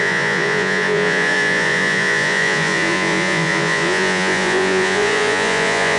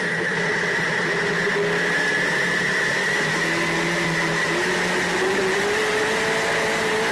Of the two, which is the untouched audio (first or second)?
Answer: second